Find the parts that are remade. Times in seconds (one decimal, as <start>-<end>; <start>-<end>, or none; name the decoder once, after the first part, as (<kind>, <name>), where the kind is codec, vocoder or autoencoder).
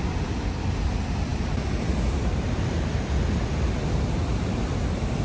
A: none